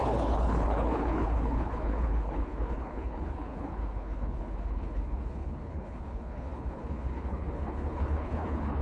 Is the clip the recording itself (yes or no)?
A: no